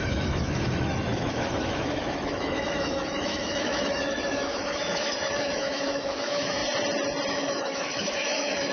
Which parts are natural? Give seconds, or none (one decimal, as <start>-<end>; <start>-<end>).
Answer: 6.6-7.3